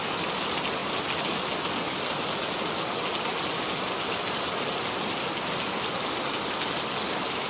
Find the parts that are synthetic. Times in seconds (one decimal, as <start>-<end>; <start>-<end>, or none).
none